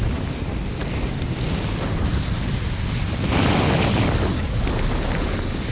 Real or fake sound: real